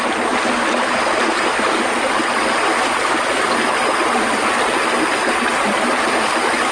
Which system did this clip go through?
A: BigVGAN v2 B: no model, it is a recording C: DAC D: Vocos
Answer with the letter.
B